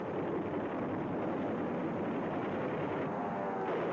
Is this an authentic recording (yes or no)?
yes